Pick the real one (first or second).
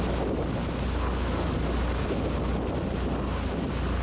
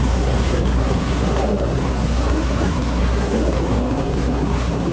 first